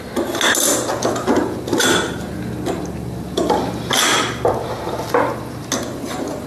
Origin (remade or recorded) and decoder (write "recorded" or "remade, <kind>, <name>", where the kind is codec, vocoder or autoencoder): recorded